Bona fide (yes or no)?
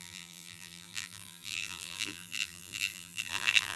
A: no